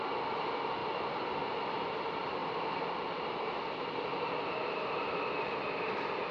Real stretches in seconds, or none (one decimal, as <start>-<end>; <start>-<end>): 0.0-2.4